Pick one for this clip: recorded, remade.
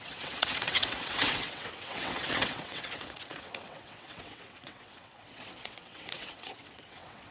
remade